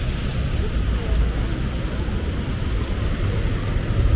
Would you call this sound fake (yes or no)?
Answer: no